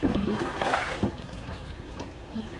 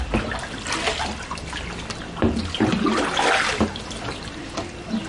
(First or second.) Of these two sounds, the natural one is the second